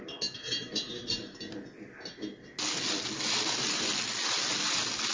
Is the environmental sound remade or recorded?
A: recorded